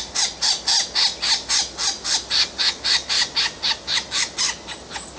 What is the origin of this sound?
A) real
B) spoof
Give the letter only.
A